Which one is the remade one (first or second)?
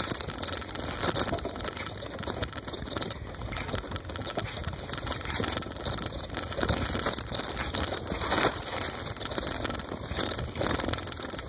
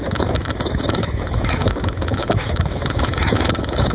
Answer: second